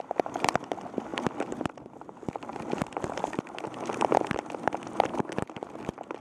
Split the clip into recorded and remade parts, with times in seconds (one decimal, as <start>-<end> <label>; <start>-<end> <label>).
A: 0.0-5.1 recorded; 5.1-5.8 remade; 5.8-6.2 recorded